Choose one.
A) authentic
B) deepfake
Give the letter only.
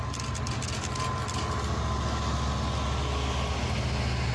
A